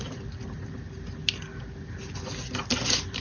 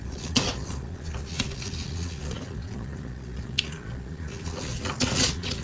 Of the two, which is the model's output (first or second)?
second